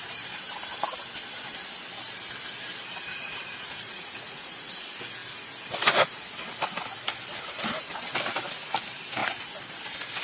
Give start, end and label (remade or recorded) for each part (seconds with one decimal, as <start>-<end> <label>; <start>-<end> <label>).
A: 0.0-3.1 recorded; 3.1-4.7 remade; 4.7-10.2 recorded